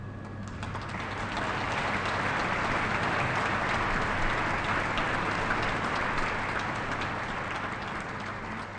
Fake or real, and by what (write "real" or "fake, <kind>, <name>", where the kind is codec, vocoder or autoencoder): real